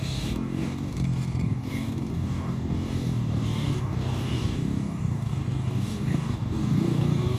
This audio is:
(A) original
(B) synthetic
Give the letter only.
B